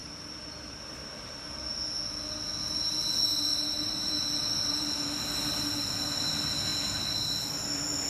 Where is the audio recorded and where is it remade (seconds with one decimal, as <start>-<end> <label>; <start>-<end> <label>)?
0.0-1.5 remade; 1.5-3.5 recorded; 3.5-4.1 remade; 4.1-8.1 recorded